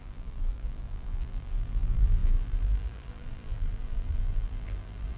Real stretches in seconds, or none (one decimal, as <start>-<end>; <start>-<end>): none